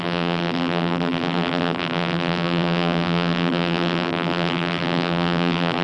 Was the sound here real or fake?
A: fake